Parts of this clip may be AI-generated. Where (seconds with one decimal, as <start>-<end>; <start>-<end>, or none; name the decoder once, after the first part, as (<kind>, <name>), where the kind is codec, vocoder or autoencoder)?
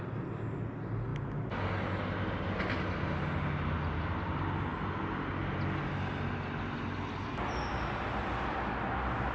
none